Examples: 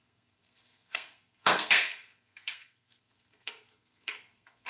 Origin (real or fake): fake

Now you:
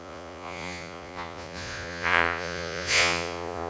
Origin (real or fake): fake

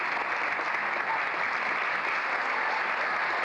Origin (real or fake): real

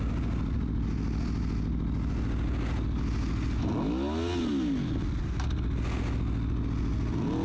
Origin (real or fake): real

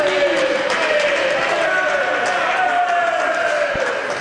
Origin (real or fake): fake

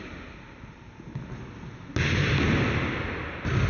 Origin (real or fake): real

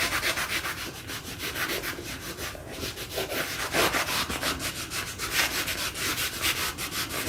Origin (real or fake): real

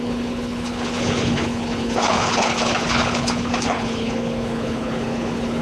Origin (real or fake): fake